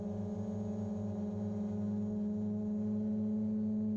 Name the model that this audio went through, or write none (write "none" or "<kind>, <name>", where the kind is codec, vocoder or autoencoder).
none